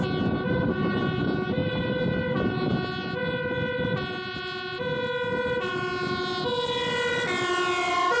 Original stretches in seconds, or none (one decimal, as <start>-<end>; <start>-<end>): 0.0-8.2